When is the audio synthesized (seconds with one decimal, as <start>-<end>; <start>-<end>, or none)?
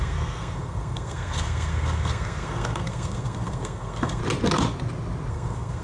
0.0-4.2; 5.3-5.8